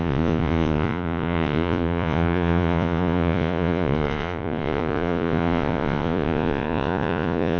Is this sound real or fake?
fake